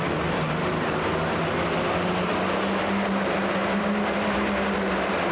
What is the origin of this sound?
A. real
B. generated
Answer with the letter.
A